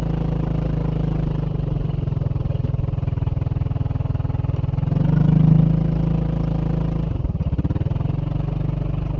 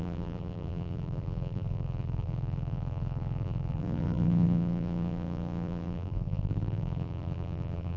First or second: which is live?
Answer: first